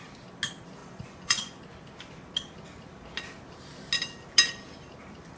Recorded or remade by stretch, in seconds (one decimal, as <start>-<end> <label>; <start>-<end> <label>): 0.0-0.8 recorded; 0.8-1.6 remade; 1.6-5.4 recorded